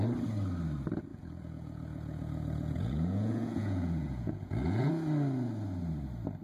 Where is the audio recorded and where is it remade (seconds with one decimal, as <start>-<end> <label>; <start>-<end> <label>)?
0.0-1.1 recorded; 1.1-4.9 remade; 4.9-6.4 recorded